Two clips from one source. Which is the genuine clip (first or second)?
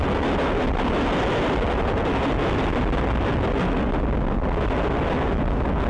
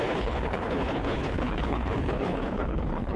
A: first